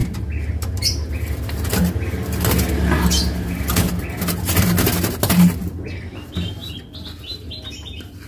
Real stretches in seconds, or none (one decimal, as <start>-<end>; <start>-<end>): 0.0-8.3